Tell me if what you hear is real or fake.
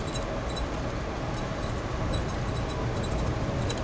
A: real